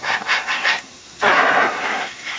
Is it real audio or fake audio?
fake